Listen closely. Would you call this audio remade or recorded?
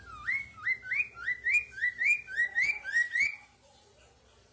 recorded